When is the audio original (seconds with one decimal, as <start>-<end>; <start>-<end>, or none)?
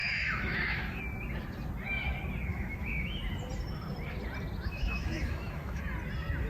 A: 1.0-2.5; 3.2-4.7; 5.8-6.5